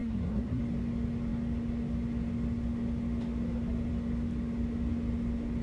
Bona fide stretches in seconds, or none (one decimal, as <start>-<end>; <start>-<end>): 0.6-5.6